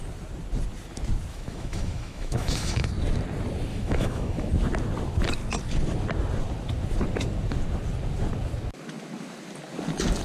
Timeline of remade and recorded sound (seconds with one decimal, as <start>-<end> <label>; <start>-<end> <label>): 0.0-1.3 recorded; 1.3-2.9 remade; 2.9-3.7 recorded; 3.7-4.5 remade; 4.5-10.2 recorded

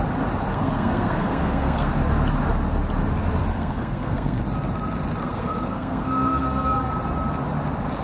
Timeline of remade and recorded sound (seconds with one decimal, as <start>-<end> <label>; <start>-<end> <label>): 0.0-0.5 recorded; 0.5-1.9 remade; 1.9-3.5 recorded; 3.5-4.4 remade; 4.4-5.2 recorded; 5.2-6.9 remade; 6.9-8.0 recorded

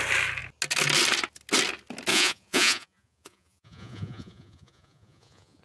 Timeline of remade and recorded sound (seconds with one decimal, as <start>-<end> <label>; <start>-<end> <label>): 0.0-2.1 recorded; 2.1-5.6 remade

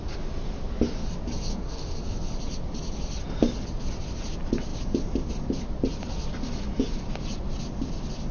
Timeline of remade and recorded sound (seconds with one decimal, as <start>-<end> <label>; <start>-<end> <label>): 0.0-1.5 recorded; 1.5-2.3 remade; 2.3-8.3 recorded

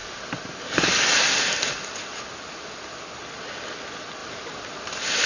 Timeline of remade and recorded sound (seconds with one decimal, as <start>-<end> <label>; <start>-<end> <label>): 0.0-4.2 recorded; 4.2-5.3 remade

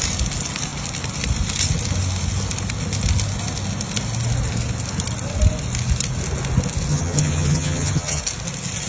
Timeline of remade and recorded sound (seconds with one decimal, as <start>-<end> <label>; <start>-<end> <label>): 0.0-6.9 recorded; 6.9-8.2 remade; 8.2-8.9 recorded

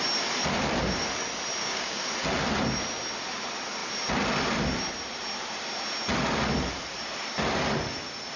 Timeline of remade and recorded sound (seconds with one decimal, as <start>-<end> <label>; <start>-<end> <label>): 0.0-1.6 recorded; 1.6-2.1 remade; 2.1-8.4 recorded